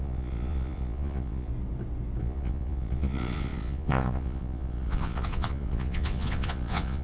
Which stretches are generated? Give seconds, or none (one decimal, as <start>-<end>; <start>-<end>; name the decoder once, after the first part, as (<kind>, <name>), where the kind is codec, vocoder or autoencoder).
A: 0.0-1.5 (vocoder, Vocos); 2.2-7.0